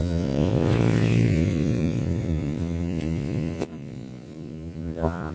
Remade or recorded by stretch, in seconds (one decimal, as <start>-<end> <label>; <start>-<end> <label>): 0.0-5.3 remade